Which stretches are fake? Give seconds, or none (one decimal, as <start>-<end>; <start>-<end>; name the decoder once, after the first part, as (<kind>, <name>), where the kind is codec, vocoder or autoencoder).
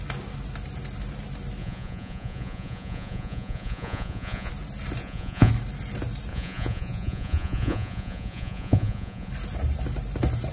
1.6-4.5 (vocoder, Vocos); 5.0-5.5; 6.3-9.3